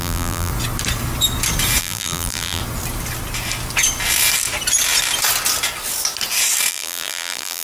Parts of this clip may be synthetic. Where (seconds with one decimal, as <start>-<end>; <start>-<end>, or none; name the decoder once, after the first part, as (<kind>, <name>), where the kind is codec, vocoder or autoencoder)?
0.0-0.5 (vocoder, BigVGAN v2); 1.8-2.6; 6.7-7.6